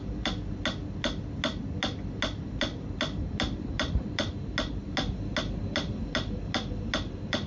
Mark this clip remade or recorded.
recorded